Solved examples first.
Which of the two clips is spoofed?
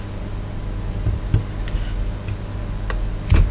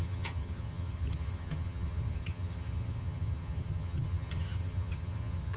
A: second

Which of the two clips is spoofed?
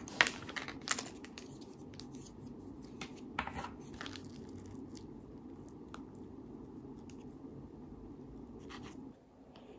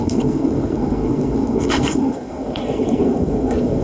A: second